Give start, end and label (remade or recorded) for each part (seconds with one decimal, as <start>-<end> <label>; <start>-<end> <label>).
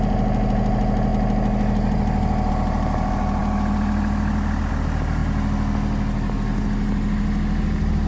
0.0-8.1 recorded